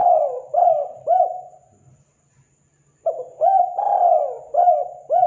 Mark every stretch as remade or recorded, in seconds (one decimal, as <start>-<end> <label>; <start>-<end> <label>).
0.0-1.4 remade; 1.4-5.3 recorded